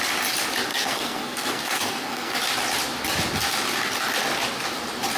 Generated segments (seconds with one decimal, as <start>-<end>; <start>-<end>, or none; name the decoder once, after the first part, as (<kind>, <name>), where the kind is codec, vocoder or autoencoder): 0.7-2.3 (codec, SNAC)